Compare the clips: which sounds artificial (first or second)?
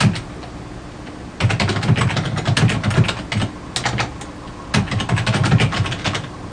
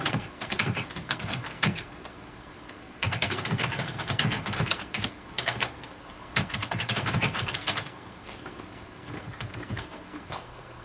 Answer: second